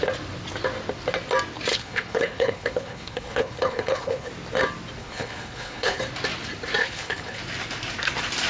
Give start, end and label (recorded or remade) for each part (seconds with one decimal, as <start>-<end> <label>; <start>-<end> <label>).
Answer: 0.0-1.7 recorded; 1.7-4.3 remade; 4.3-5.0 recorded; 5.0-6.0 remade; 6.0-6.8 recorded; 6.8-7.4 remade; 7.4-8.5 recorded

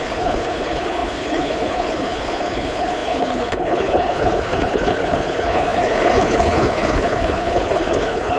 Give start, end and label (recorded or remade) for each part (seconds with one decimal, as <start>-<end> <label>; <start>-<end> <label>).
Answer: 0.0-8.4 remade

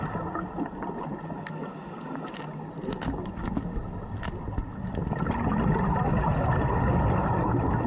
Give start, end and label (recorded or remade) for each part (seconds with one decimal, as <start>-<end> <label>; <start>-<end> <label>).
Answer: 0.0-7.9 recorded

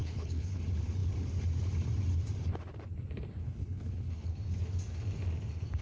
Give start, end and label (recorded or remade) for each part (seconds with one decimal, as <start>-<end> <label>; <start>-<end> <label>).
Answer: 0.0-0.6 remade; 0.6-3.4 recorded; 3.4-4.3 remade; 4.3-5.8 recorded

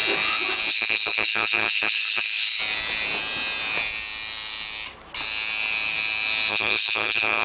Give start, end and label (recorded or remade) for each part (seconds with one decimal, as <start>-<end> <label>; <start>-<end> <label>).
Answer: 0.0-0.7 recorded; 0.7-2.6 remade; 2.6-6.5 recorded; 6.5-7.4 remade

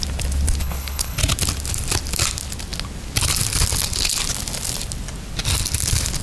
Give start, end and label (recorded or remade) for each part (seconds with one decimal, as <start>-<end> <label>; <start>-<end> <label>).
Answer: 0.0-0.6 recorded; 0.6-1.2 remade; 1.2-6.2 recorded